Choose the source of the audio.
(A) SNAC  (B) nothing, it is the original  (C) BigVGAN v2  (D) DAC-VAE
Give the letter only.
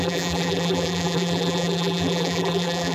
C